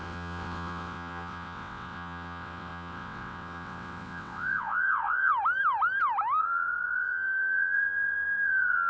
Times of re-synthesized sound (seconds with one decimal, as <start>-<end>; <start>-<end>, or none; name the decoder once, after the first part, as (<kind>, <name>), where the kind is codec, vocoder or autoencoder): 0.0-5.3 (vocoder, WaveNeXt); 6.4-8.9